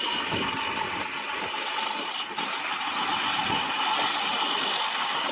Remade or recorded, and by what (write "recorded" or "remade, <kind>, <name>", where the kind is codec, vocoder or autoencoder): recorded